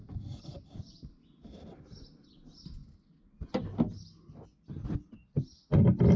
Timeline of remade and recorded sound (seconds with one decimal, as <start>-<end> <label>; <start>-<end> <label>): 0.0-6.2 recorded